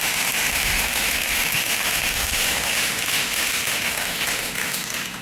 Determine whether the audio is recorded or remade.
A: remade